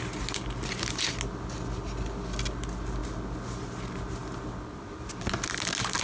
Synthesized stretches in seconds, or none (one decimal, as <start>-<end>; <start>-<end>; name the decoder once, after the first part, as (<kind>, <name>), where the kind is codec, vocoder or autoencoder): none